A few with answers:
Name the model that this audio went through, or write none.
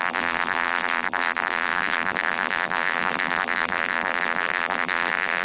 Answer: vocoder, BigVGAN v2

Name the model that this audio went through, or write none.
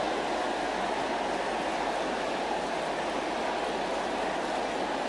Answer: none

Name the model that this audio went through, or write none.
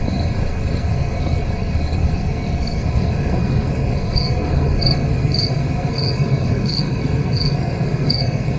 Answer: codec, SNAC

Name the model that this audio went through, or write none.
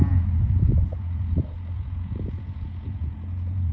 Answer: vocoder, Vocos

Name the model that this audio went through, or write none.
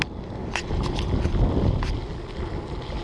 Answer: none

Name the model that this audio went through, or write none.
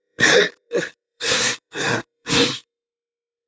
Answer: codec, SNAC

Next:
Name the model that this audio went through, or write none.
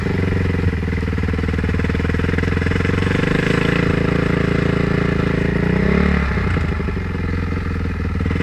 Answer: none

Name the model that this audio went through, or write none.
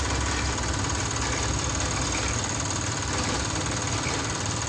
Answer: none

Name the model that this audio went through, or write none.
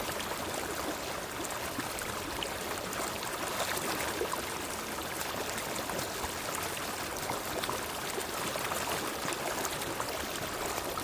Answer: none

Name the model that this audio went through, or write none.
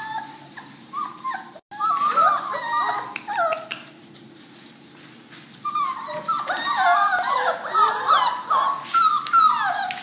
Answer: none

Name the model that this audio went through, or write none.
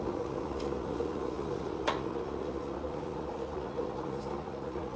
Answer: vocoder, Vocos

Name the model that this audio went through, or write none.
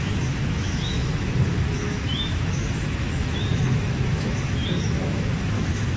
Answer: autoencoder, DAC-VAE